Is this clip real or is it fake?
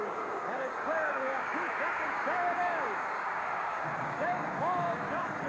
fake